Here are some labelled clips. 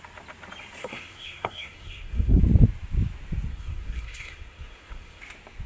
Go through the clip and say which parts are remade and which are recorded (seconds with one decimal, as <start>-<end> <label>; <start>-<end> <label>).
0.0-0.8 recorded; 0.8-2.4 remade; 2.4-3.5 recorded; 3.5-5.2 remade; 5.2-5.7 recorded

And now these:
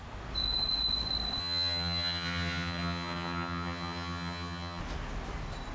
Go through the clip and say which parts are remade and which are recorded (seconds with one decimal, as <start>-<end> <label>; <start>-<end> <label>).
0.0-1.4 recorded; 1.4-4.8 remade; 4.8-5.7 recorded

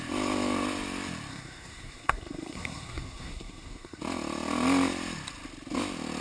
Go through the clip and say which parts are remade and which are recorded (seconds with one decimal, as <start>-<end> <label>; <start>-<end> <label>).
0.0-1.3 recorded; 1.3-4.0 remade; 4.0-6.2 recorded